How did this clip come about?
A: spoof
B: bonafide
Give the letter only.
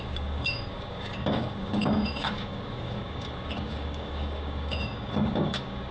A